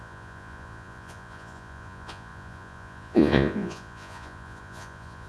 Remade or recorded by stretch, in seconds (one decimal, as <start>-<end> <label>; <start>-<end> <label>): 0.0-5.3 remade